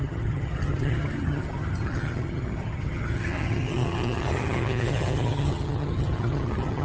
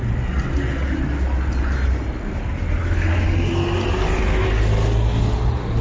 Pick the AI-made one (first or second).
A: first